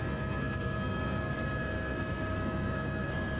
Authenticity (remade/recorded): remade